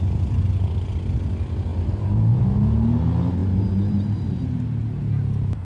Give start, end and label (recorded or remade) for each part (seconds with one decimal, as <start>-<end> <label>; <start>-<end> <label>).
0.0-1.7 recorded; 1.7-2.4 remade; 2.4-3.4 recorded; 3.4-4.6 remade; 4.6-5.6 recorded